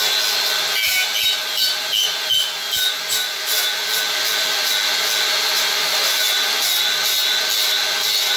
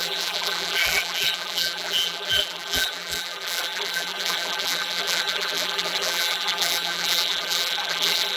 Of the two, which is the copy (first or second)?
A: second